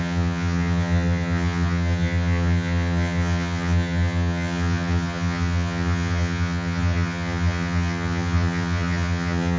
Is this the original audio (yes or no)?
no